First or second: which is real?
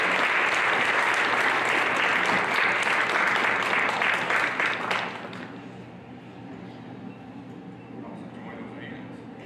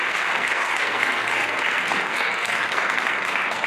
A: first